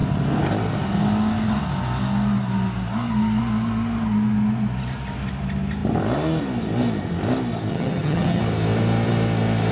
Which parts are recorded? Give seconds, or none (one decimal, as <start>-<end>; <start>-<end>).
0.0-7.7; 8.4-9.7